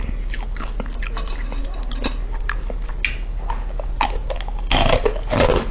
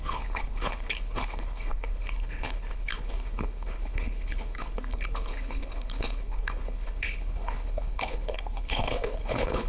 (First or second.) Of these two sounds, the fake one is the second